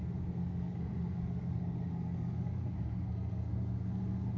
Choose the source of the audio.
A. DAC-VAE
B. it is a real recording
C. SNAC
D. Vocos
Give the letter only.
C